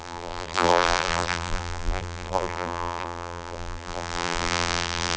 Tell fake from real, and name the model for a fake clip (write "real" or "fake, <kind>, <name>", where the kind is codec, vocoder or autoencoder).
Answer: fake, vocoder, BigVGAN v2